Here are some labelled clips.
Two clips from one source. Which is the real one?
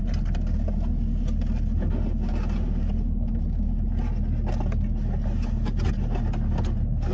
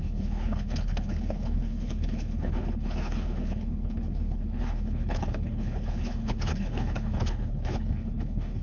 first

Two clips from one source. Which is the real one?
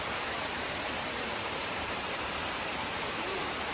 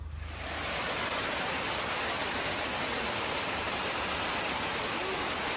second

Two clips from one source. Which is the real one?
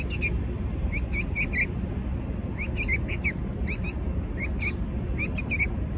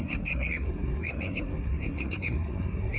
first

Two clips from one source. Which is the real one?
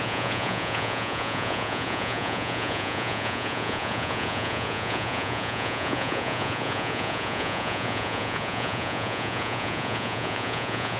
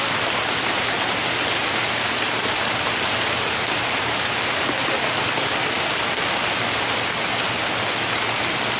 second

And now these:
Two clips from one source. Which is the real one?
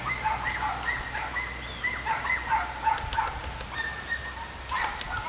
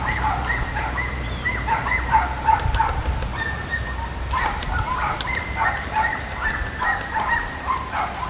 first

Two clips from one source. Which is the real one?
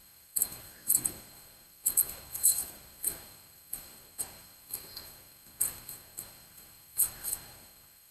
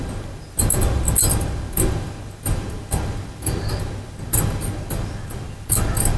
second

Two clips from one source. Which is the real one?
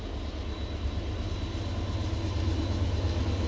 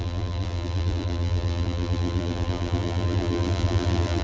first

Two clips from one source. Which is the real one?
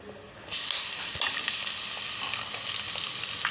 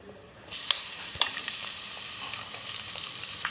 first